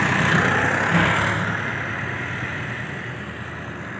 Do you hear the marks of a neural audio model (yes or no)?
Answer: no